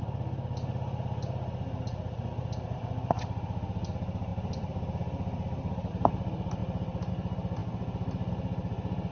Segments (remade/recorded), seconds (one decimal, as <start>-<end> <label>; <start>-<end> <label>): 0.0-9.1 recorded